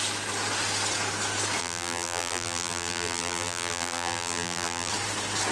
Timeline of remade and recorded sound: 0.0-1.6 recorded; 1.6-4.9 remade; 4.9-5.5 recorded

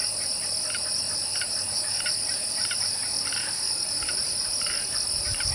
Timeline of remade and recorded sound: 0.0-0.8 recorded; 0.8-5.5 remade